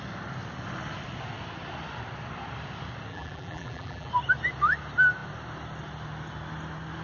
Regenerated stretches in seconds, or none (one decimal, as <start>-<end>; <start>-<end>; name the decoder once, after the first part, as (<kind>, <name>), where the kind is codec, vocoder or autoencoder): 3.1-4.1 (vocoder, BigVGAN v2)